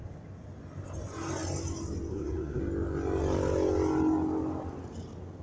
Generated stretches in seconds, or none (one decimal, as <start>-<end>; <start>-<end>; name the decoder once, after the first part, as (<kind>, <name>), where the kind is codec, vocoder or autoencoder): 2.1-2.6 (codec, SNAC)